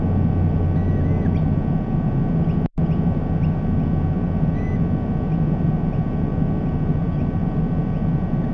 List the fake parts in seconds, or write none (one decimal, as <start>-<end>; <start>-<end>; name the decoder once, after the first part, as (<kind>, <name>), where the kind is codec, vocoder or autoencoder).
none